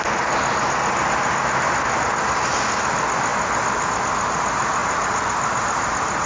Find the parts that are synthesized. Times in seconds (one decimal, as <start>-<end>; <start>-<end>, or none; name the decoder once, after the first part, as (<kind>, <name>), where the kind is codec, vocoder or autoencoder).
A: 4.8-5.3 (vocoder, BigVGAN v2)

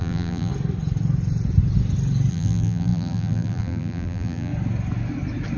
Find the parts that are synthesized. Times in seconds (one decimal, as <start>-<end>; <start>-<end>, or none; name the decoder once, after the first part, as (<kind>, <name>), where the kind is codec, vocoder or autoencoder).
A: 0.0-0.5 (vocoder, BigVGAN v2); 2.3-4.5

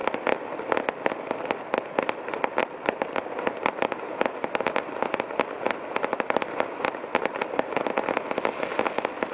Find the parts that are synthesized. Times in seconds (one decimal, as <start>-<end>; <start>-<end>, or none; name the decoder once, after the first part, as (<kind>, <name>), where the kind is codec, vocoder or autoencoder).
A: 2.6-4.0 (vocoder, BigVGAN v2); 7.4-8.2

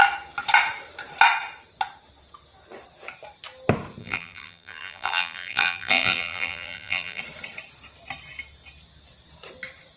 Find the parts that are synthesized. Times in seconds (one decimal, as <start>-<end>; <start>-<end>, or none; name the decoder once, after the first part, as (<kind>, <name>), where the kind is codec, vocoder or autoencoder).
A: 4.0-7.2 (vocoder, BigVGAN v2)

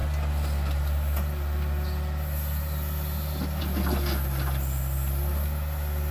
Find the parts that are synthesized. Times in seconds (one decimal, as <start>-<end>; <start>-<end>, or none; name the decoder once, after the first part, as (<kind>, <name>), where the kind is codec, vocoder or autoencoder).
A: none